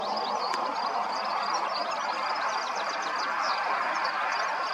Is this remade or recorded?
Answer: recorded